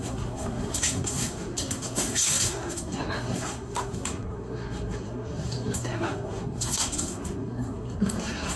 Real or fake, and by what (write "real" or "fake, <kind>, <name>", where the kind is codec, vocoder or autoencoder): fake, codec, SNAC